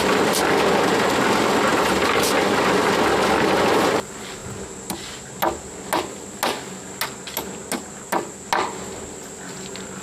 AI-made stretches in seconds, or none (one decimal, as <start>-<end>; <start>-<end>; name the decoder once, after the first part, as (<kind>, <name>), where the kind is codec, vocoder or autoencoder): none